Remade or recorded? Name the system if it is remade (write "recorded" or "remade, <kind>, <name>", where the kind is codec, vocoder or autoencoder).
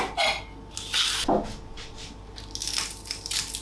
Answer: recorded